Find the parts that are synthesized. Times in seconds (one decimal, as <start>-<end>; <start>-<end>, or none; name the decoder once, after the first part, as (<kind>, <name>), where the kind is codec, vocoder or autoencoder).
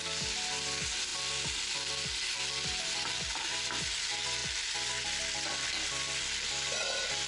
none